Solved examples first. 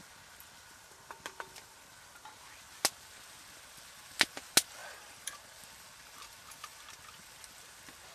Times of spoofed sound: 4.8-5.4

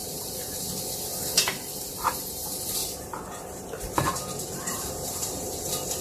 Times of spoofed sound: 0.0-0.7; 1.2-2.1; 2.8-5.6

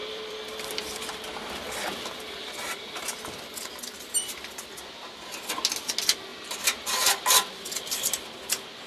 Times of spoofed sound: 0.0-2.1; 6.3-8.0

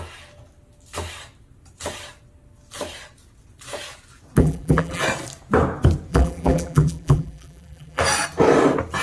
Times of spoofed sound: 4.4-5.0; 6.1-8.0

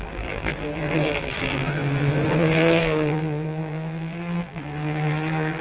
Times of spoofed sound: 0.0-5.6